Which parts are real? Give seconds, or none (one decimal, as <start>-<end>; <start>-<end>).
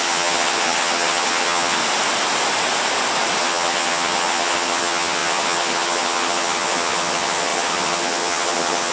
1.8-3.4